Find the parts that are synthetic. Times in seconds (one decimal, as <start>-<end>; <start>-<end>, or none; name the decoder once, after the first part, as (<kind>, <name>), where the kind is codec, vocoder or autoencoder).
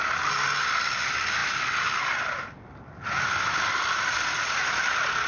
0.0-1.4 (vocoder, BigVGAN v2); 3.7-5.3